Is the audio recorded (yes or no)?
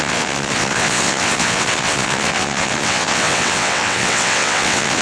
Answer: no